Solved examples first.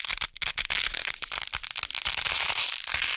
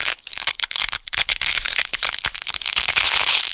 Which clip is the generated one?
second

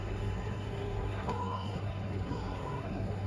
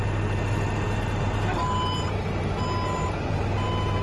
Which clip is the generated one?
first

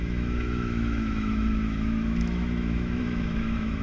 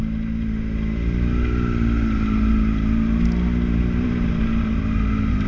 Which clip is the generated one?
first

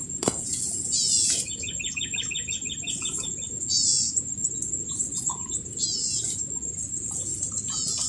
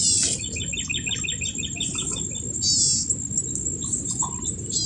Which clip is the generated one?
first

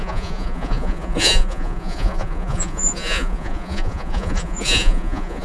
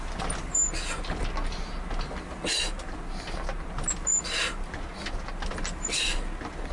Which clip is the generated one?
first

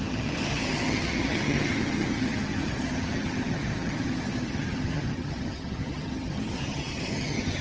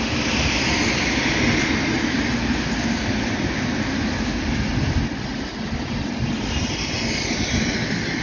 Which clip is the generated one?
first